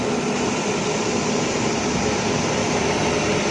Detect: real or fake real